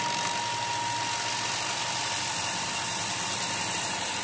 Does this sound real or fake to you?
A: real